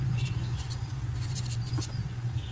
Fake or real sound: fake